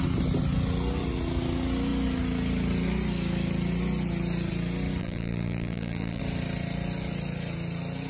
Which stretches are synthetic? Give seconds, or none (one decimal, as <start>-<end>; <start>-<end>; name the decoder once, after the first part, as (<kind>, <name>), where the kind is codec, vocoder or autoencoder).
5.0-6.2 (vocoder, BigVGAN v2)